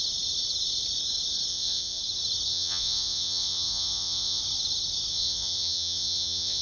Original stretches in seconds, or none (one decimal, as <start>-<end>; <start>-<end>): 0.0-1.5; 2.0-2.5; 4.4-5.1